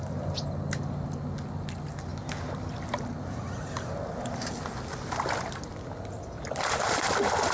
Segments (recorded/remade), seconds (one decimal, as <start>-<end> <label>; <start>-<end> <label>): 0.0-7.5 recorded